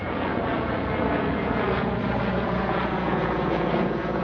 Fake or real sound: fake